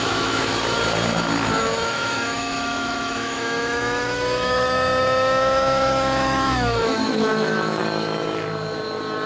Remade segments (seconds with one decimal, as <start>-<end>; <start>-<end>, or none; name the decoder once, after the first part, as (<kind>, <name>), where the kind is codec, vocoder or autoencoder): 0.0-0.5 (autoencoder, DAC-VAE); 1.6-7.8